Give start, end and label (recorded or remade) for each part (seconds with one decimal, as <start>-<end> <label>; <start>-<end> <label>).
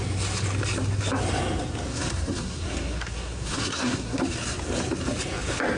0.0-1.9 recorded; 1.9-4.2 remade; 4.2-5.8 recorded